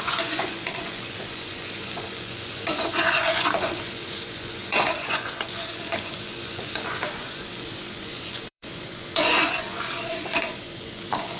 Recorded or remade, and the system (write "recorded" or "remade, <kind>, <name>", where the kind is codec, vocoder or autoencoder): remade, vocoder, Vocos